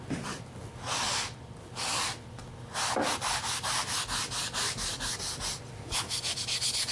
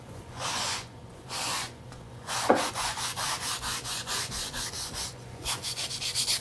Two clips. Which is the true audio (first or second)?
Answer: first